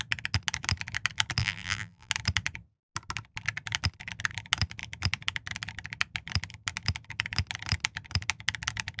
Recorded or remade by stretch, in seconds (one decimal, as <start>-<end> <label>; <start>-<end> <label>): 0.0-1.4 recorded; 1.4-2.1 remade; 2.1-9.0 recorded